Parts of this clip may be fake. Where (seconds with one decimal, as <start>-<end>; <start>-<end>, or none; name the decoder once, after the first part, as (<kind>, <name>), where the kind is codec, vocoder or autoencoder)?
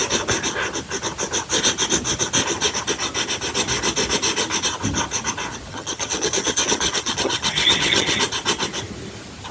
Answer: 5.7-8.2 (vocoder, HiFi-GAN)